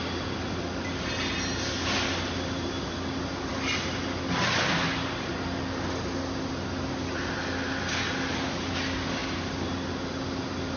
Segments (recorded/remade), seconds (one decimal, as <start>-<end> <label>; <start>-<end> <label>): 0.0-10.8 recorded